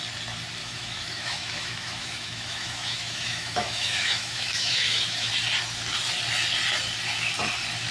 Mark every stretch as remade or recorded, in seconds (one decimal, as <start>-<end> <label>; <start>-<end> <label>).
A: 0.0-0.6 recorded; 0.6-5.3 remade; 5.3-7.9 recorded